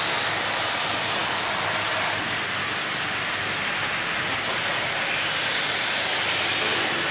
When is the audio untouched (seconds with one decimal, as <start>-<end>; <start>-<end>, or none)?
0.0-7.1